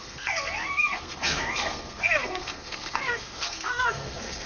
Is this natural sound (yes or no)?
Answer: no